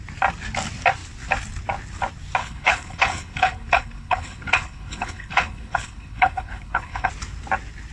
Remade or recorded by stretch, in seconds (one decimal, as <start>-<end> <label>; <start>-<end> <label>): 0.0-2.4 recorded; 2.4-7.1 remade; 7.1-7.9 recorded